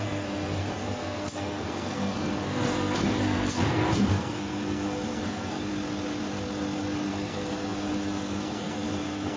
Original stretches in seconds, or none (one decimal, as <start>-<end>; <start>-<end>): 5.7-7.1